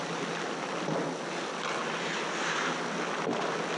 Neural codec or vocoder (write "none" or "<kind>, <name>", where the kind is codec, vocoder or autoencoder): none